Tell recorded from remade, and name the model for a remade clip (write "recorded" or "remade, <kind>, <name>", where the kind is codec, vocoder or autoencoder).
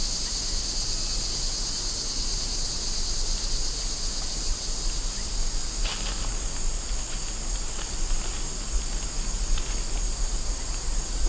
recorded